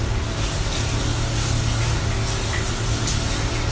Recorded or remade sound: recorded